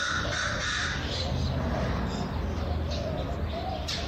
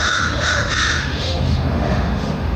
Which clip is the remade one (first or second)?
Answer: second